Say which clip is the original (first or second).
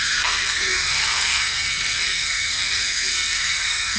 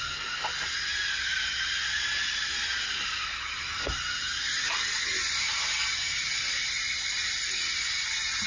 second